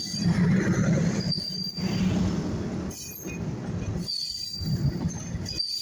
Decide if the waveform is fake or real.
real